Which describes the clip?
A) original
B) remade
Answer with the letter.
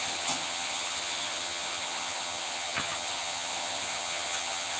B